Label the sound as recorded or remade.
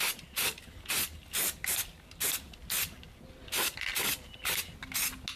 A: recorded